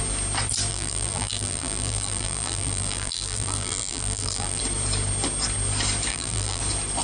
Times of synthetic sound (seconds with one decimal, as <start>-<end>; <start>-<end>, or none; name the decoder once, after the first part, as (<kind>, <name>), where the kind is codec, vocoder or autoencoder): 0.7-4.6 (vocoder, BigVGAN v2); 6.1-6.6